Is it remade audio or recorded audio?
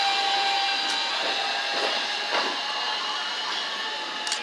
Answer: recorded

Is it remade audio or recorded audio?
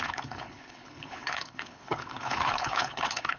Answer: remade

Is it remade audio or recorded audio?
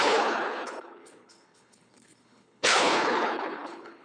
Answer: remade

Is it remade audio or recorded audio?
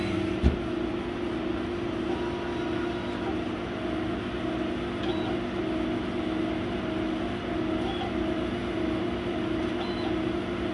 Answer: recorded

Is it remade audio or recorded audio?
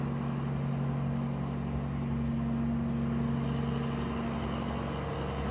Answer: recorded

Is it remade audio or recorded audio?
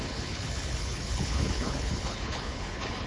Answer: remade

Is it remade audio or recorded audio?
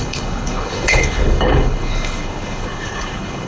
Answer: remade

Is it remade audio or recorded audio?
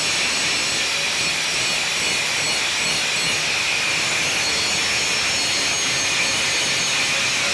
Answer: recorded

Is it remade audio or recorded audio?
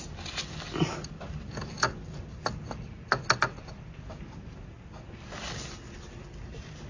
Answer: recorded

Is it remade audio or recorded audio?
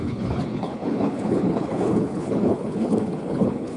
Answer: remade